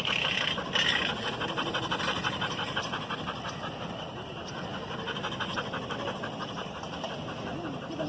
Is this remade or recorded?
recorded